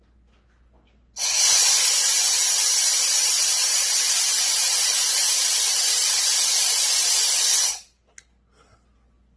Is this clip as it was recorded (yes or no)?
yes